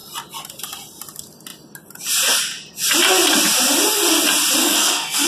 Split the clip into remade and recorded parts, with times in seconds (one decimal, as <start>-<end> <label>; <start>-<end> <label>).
0.0-4.6 recorded; 4.6-5.3 remade